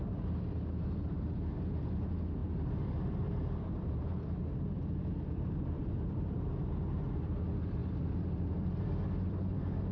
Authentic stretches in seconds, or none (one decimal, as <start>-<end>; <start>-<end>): 0.0-2.4; 6.5-7.8; 9.3-9.9